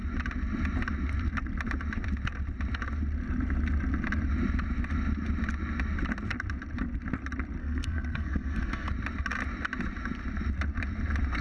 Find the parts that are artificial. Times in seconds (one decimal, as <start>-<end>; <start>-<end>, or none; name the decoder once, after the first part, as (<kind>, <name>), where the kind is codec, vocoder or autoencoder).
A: 7.6-8.9 (codec, SNAC)